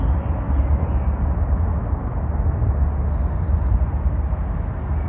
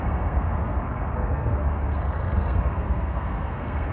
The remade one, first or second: second